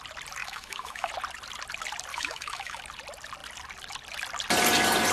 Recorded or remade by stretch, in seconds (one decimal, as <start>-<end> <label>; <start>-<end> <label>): 0.0-0.4 recorded; 0.4-1.1 remade; 1.1-2.1 recorded; 2.1-2.8 remade; 2.8-5.1 recorded